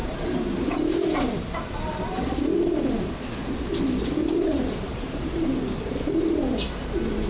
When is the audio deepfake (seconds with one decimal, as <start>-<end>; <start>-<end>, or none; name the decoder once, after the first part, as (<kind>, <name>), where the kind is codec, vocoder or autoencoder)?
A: 0.0-1.8 (vocoder, BigVGAN v2); 4.2-5.3